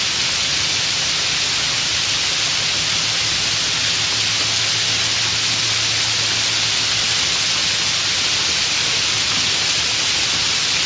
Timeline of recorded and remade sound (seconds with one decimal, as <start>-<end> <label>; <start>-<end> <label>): 0.0-10.9 recorded